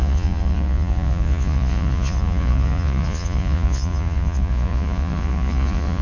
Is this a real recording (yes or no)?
no